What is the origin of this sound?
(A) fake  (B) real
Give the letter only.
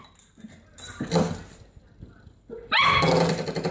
A